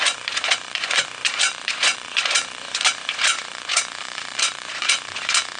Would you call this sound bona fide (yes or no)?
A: no